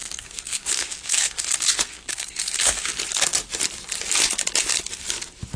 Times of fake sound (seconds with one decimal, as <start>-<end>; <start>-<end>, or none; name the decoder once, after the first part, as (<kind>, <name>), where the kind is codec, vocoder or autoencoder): 0.0-2.9 (codec, SNAC)

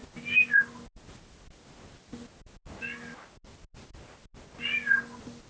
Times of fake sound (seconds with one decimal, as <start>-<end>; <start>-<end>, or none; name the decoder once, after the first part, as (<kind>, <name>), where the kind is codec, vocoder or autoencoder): none

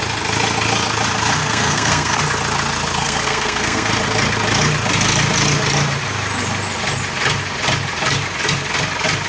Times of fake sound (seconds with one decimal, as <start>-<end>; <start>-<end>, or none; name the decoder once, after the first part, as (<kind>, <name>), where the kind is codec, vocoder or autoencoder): 1.4-2.2 (codec, SNAC); 3.0-3.9

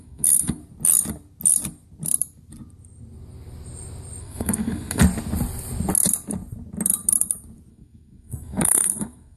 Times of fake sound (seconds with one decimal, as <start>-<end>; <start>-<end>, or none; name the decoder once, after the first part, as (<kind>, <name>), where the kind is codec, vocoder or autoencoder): 0.0-0.6 (codec, SNAC); 4.2-5.0; 7.7-9.4

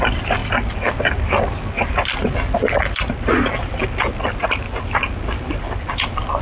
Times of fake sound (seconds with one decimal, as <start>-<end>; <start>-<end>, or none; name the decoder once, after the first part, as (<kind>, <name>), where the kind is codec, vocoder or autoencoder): none

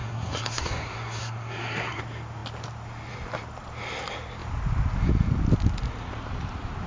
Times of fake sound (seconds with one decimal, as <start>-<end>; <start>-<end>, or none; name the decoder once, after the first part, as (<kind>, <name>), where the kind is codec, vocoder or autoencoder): 0.0-2.0 (codec, SNAC)

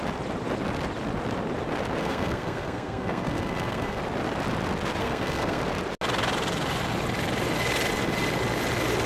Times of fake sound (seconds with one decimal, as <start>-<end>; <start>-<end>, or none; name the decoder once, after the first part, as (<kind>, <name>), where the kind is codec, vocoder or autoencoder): 2.0-4.0 (codec, SNAC); 5.0-5.6